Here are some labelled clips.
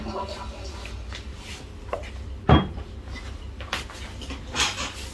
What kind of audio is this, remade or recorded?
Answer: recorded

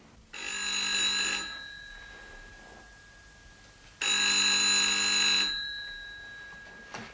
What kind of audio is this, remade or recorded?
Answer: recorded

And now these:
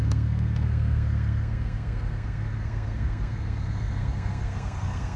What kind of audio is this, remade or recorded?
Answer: remade